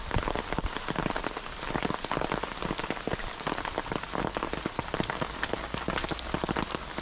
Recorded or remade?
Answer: recorded